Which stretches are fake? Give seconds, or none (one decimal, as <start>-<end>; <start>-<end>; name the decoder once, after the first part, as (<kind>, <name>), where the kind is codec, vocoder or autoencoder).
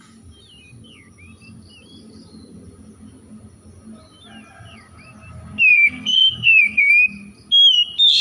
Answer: 5.7-6.9 (codec, SNAC)